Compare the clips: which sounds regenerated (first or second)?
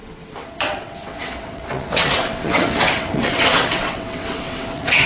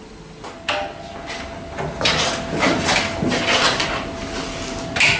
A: first